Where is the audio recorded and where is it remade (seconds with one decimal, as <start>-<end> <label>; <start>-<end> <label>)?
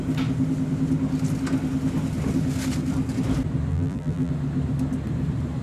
0.0-3.7 recorded; 3.7-4.3 remade; 4.3-5.6 recorded